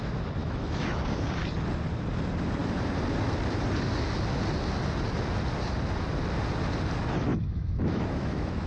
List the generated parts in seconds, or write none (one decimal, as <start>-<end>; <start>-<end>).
0.4-1.0; 7.3-8.7